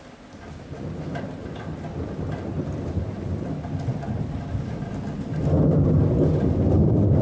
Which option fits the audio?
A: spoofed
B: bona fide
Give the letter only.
B